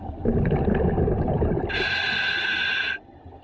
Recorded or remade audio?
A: recorded